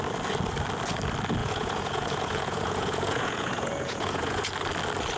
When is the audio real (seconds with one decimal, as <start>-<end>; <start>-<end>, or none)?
0.0-1.4; 4.5-5.2